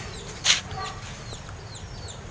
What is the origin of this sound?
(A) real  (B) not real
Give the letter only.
A